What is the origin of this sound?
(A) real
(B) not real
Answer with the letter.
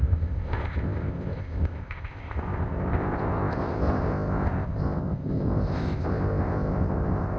B